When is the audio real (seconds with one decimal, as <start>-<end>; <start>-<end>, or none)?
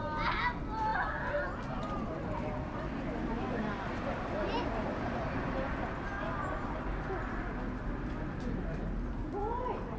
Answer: 0.0-10.0